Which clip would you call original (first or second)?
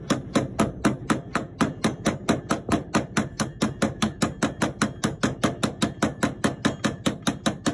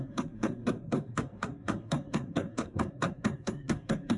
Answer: first